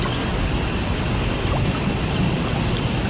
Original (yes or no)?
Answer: yes